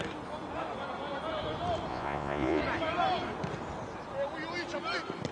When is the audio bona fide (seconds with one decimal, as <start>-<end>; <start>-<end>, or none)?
0.0-1.9; 2.6-5.3

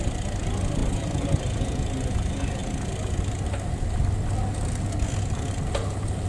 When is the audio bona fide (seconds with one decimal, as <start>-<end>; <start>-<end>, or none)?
0.0-6.3

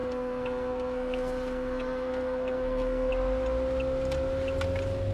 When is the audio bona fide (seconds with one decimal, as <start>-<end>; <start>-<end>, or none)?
3.1-5.1

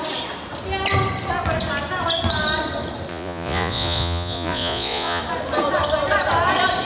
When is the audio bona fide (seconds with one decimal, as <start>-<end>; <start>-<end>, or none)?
0.0-3.1; 5.2-6.8

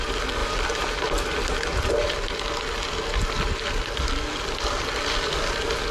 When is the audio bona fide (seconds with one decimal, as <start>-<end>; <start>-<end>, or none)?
0.0-5.9